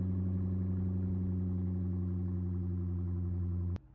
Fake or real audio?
real